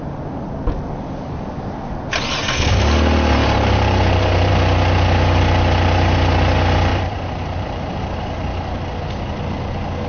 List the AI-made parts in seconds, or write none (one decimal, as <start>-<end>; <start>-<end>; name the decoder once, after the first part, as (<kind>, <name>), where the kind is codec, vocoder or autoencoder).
3.4-4.5 (vocoder, BigVGAN v2); 6.9-7.9